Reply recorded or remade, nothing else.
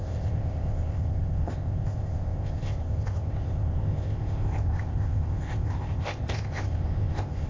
remade